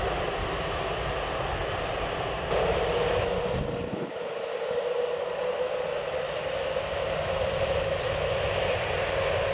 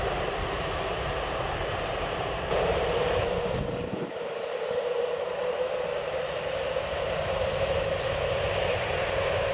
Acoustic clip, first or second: first